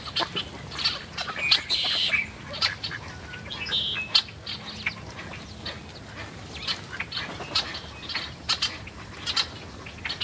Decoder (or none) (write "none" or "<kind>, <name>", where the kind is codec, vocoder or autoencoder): none